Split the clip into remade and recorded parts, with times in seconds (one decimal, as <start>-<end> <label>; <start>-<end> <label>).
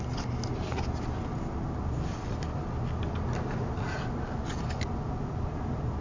0.0-6.0 recorded